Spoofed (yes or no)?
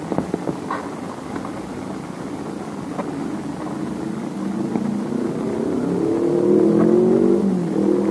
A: no